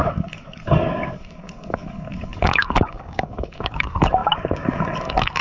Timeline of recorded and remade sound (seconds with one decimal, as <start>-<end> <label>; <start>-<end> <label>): 0.0-5.4 remade